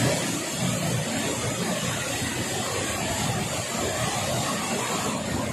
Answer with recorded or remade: recorded